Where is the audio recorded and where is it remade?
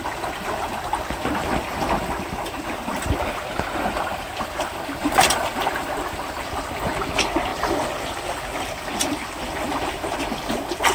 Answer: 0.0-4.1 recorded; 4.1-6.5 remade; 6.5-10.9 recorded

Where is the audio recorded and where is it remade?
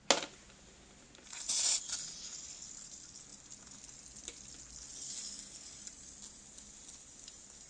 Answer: 0.0-7.7 recorded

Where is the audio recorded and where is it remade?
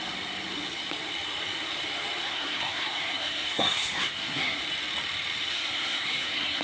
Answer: 0.0-2.2 recorded; 2.2-4.6 remade; 4.6-5.5 recorded; 5.5-6.6 remade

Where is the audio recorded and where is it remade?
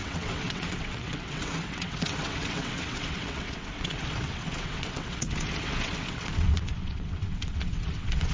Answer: 0.0-8.3 remade